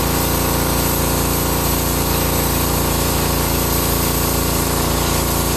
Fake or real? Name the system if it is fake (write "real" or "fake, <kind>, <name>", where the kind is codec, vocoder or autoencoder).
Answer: fake, vocoder, BigVGAN v2